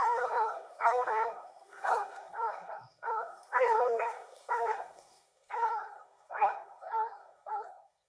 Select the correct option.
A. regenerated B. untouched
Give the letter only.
A